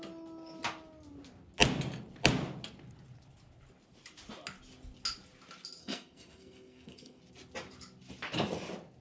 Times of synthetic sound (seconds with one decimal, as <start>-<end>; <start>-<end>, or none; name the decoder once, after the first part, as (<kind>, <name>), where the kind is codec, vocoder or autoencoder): 5.8-7.2 (codec, SNAC)